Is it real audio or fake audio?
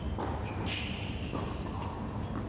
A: real